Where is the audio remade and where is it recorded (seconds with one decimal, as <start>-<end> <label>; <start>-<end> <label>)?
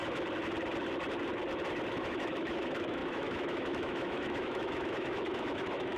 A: 0.0-1.9 recorded; 1.9-6.0 remade